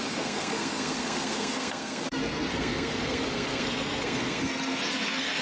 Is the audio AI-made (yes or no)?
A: yes